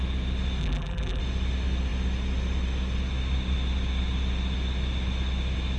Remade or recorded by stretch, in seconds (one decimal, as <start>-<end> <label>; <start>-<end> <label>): 0.0-0.6 recorded; 0.6-1.2 remade; 1.2-5.8 recorded